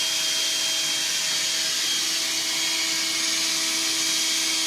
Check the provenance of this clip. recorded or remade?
recorded